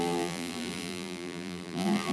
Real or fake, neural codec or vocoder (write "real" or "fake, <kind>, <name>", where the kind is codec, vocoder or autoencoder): fake, vocoder, BigVGAN v2